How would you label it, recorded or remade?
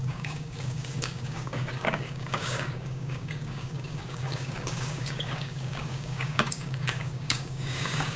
remade